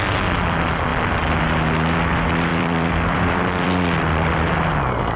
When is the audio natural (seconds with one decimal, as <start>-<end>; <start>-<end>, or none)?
0.0-0.9; 1.4-2.5; 4.5-5.2